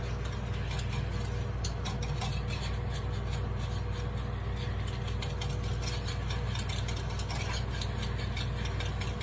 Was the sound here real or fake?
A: real